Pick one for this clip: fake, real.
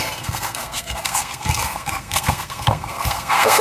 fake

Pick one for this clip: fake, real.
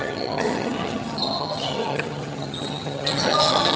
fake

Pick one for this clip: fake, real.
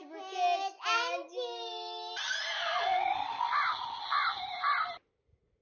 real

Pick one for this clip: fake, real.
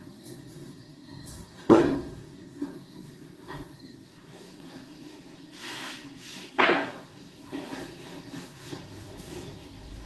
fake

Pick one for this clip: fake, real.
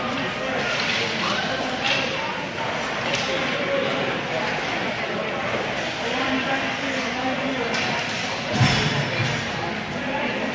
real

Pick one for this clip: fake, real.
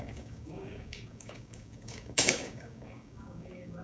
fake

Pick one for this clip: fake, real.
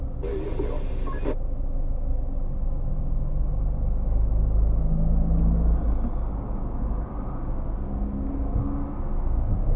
real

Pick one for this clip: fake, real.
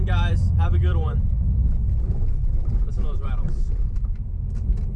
fake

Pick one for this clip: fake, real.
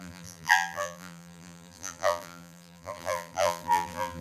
fake